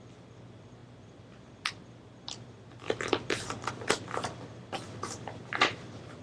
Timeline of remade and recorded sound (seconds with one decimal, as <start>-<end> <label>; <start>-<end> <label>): 0.0-6.2 recorded